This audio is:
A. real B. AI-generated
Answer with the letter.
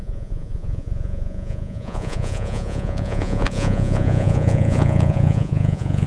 B